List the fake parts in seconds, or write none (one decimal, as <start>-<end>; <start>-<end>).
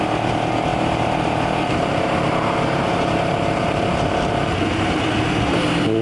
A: 0.7-4.3